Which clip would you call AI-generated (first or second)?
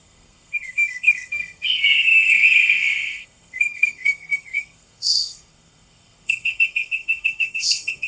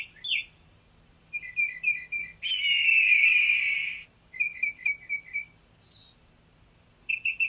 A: first